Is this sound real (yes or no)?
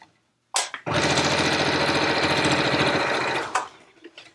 yes